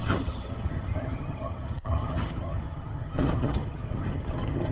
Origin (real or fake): fake